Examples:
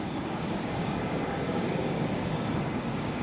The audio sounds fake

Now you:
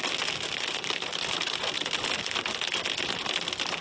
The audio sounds real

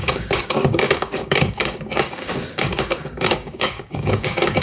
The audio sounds fake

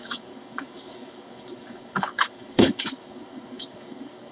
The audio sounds fake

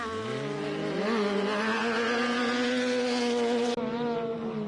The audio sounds real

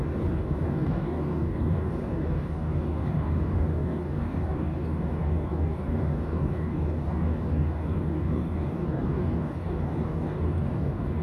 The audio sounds fake